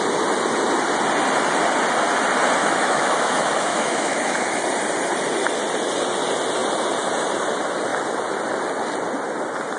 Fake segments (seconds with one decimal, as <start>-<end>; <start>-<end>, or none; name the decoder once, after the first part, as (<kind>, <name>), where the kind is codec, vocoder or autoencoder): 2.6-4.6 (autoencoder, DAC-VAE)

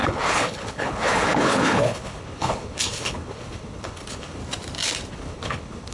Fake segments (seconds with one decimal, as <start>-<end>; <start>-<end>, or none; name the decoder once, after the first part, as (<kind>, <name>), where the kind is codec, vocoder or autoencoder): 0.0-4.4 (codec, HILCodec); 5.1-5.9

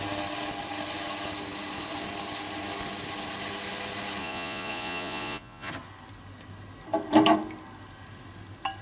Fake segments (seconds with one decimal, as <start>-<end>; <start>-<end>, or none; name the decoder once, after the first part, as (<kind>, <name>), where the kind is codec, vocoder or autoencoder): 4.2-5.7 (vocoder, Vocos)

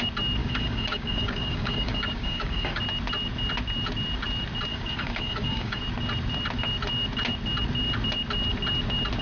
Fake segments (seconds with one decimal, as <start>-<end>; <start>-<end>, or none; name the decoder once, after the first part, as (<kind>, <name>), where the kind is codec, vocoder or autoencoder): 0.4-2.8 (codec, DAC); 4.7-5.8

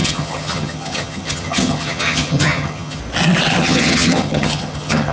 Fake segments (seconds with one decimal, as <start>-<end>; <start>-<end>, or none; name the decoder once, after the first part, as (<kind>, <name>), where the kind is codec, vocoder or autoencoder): 0.0-3.0 (vocoder, HiFi-GAN); 3.6-5.1

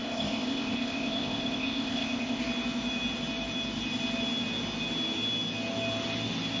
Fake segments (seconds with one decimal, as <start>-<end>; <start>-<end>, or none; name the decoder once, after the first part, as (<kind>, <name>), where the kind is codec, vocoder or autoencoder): 0.0-2.4 (codec, ZipCodec)